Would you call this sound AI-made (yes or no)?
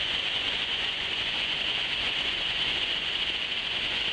yes